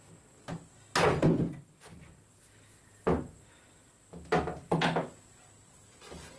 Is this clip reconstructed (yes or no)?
no